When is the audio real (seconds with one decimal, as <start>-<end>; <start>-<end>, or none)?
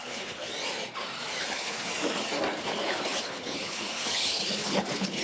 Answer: 0.5-1.4; 1.9-2.6